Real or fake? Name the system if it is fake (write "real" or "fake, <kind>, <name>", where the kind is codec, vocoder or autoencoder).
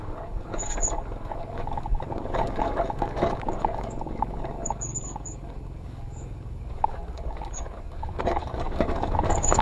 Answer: fake, codec, DAC